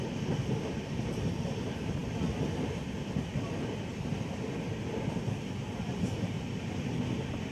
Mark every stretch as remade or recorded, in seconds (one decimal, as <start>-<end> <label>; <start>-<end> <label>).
0.0-7.5 recorded